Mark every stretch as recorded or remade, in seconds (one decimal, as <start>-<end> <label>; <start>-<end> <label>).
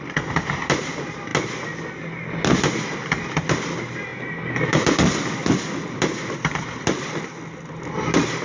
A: 0.0-1.3 remade; 1.3-3.2 recorded; 3.2-4.1 remade; 4.1-4.7 recorded; 4.7-5.4 remade; 5.4-6.0 recorded; 6.0-8.4 remade